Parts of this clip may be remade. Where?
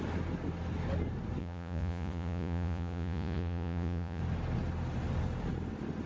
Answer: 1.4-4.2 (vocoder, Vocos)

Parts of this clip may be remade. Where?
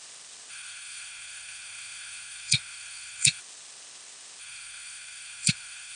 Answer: 0.5-3.4 (codec, SNAC); 4.4-6.0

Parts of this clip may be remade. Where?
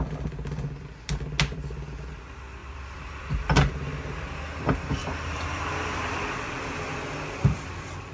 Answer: 2.6-4.6 (vocoder, BigVGAN v2); 5.0-6.8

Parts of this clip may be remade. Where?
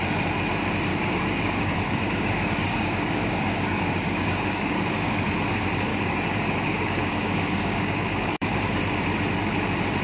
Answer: 0.9-5.3 (codec, DAC); 5.9-8.8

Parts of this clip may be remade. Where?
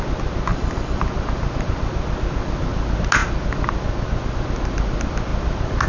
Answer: 0.5-1.0 (vocoder, BigVGAN v2)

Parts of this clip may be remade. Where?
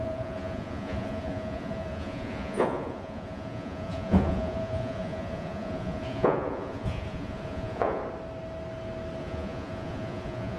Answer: 0.0-8.0 (vocoder, Vocos); 9.2-10.6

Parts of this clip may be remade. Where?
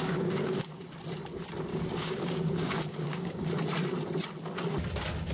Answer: 0.0-0.8 (codec, DAC); 1.7-3.5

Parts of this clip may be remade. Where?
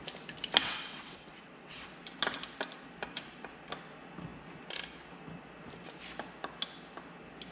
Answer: 0.6-1.9 (vocoder, WaveNeXt)